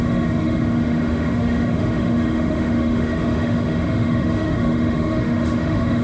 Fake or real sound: fake